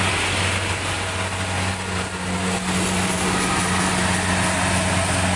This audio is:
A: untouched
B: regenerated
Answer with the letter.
A